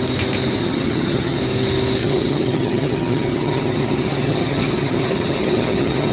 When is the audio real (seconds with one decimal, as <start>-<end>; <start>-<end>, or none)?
0.0-0.6; 1.4-2.0